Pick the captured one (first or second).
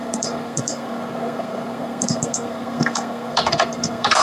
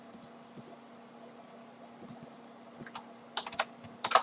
second